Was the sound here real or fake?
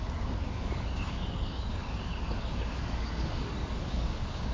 fake